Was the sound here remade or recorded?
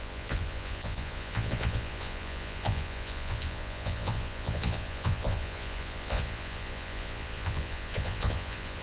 remade